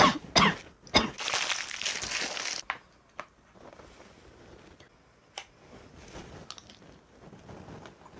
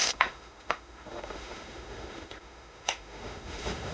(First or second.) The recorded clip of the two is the first